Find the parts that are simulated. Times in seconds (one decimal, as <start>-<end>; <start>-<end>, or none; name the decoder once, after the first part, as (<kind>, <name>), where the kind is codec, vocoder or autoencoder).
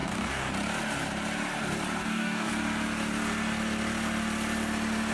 0.0-0.5 (codec, DAC); 2.0-2.5